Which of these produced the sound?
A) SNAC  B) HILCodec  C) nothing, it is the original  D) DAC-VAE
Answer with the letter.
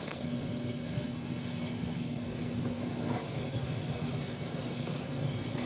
A